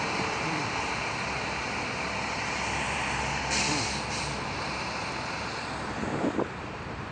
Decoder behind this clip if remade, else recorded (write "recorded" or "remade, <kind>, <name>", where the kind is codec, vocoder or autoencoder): remade, vocoder, BigVGAN v2